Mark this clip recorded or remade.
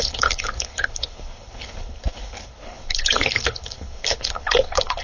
remade